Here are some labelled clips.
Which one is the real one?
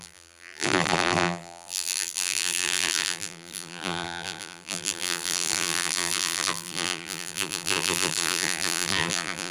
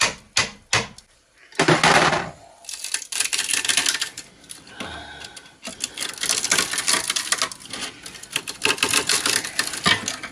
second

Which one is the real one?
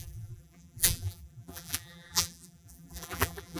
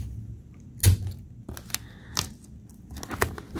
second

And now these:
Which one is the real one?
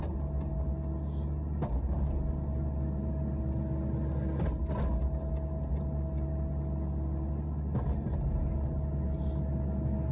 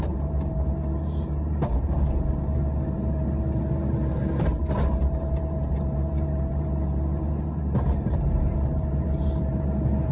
first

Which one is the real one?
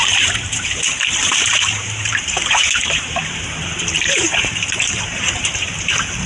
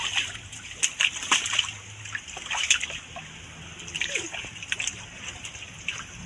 second